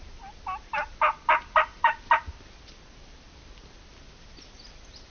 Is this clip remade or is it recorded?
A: recorded